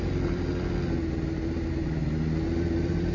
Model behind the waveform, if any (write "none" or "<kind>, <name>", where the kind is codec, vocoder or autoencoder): none